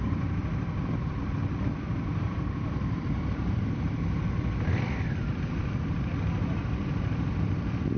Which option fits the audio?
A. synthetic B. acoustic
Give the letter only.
A